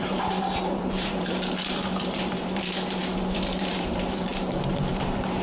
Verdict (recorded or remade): remade